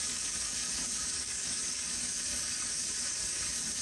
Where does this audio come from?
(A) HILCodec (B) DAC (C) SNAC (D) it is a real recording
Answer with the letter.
B